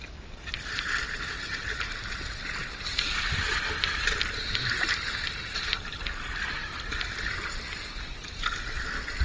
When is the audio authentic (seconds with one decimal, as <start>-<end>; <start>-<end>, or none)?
0.0-9.2